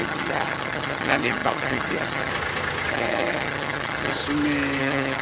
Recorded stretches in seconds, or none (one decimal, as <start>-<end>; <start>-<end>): 2.3-2.9; 4.2-4.8